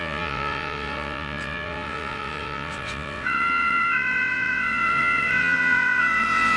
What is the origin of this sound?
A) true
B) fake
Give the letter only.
B